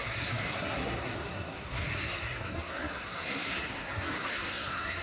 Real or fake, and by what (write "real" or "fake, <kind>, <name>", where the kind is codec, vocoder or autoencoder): fake, codec, SNAC